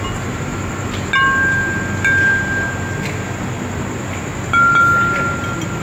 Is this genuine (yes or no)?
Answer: yes